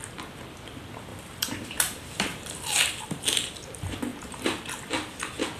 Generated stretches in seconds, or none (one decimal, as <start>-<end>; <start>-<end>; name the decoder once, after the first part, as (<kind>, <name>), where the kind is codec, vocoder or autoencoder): 1.1-3.0 (vocoder, BigVGAN v2); 4.1-4.6